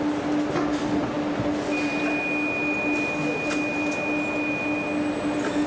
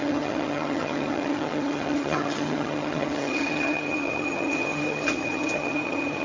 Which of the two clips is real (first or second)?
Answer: first